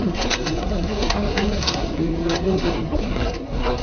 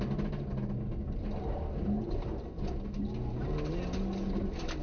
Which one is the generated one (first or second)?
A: first